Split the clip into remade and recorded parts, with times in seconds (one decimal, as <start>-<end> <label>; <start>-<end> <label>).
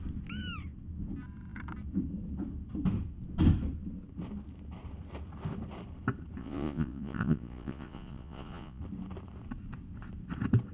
0.0-6.4 recorded; 6.4-8.8 remade; 8.8-10.7 recorded